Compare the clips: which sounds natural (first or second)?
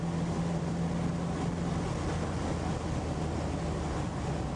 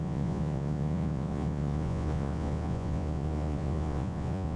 first